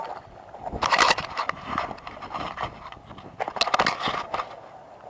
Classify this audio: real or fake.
real